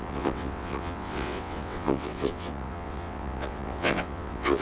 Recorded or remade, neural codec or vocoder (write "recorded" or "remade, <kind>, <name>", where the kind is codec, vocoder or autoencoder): remade, vocoder, WaveNeXt